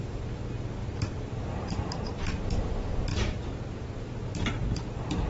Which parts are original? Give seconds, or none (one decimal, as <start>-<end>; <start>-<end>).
0.0-0.8; 2.4-5.3